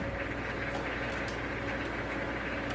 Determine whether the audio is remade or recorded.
recorded